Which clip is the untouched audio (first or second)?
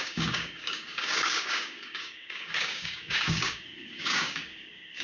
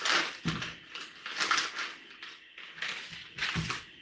second